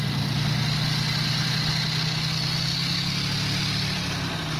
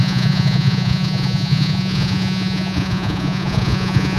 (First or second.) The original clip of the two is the first